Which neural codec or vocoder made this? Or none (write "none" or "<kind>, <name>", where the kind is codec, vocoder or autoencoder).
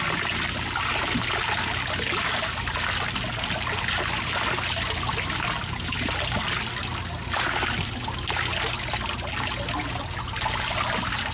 none